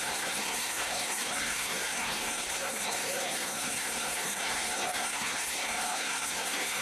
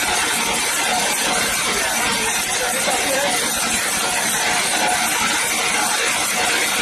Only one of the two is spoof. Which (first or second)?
first